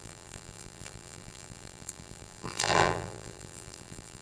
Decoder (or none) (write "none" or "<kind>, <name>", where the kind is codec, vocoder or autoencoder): vocoder, BigVGAN v2